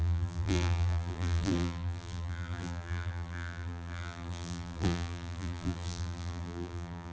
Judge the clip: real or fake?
fake